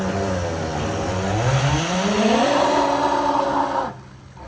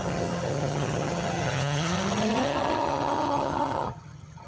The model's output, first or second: second